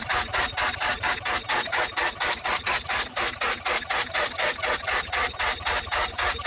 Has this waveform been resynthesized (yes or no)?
no